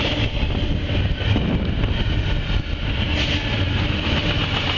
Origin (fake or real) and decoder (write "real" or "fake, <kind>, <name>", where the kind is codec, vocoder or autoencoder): real